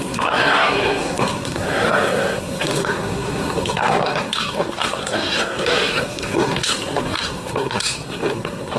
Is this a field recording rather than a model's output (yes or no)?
no